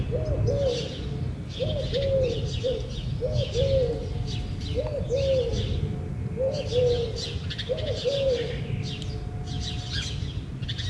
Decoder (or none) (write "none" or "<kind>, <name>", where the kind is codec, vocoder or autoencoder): none